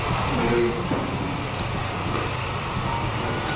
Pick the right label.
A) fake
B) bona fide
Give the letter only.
B